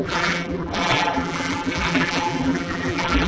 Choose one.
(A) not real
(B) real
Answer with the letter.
A